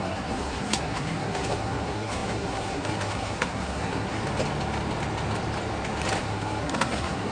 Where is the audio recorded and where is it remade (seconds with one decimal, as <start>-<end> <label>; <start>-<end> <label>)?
0.0-4.2 remade; 4.2-6.2 recorded; 6.2-7.3 remade